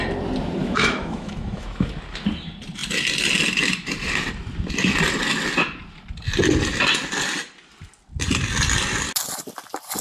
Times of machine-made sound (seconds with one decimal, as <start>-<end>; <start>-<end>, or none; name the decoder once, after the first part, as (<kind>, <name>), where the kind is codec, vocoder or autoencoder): 0.6-1.9 (autoencoder, DAC-VAE)